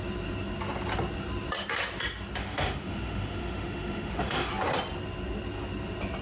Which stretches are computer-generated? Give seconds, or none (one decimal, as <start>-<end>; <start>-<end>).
2.4-4.5